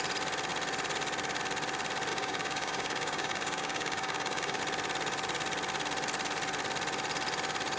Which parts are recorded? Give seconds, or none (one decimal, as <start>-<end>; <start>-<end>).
0.0-2.1; 4.6-7.8